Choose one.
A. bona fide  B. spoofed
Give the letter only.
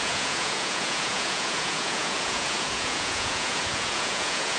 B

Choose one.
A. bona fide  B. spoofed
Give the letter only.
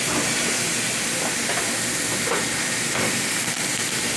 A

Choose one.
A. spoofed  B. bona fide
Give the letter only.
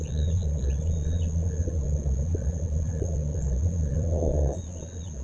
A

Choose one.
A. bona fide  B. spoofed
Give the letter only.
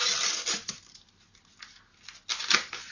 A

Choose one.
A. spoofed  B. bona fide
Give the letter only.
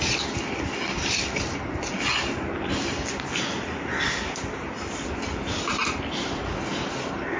B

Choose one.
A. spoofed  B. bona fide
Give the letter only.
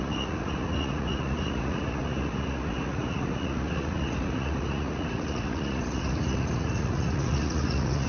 A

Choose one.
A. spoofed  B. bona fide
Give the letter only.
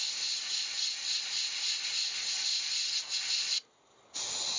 B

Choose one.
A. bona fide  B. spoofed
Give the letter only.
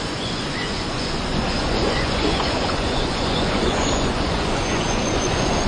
B